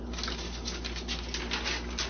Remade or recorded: recorded